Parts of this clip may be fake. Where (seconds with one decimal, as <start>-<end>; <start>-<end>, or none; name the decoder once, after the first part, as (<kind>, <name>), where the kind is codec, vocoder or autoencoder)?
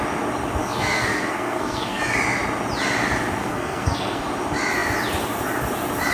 0.6-2.0 (codec, SNAC); 3.4-4.2